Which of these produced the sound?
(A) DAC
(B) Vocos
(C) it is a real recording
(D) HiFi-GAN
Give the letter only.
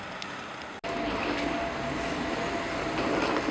C